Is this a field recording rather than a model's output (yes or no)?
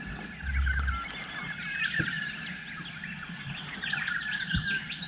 yes